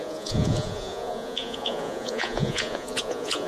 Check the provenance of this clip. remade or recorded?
remade